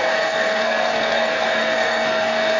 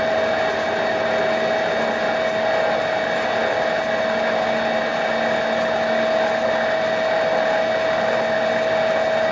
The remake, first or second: first